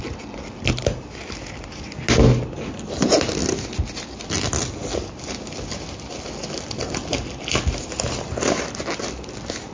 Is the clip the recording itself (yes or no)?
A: yes